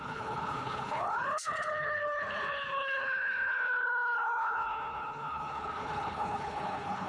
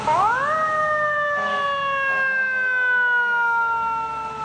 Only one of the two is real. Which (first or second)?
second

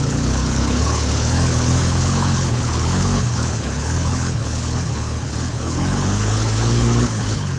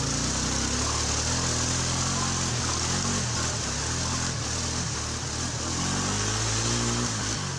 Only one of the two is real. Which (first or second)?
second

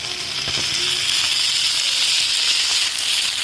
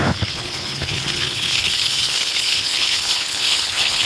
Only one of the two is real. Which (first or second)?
first